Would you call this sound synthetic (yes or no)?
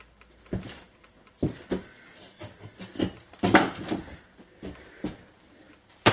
no